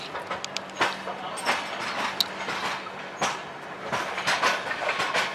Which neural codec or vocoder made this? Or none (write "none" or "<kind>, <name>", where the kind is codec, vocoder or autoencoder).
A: none